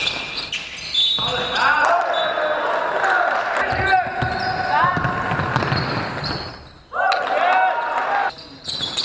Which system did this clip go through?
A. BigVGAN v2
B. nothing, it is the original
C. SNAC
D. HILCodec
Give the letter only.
B